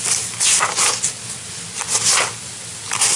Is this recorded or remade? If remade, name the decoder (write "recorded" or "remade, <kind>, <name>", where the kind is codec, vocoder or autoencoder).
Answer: recorded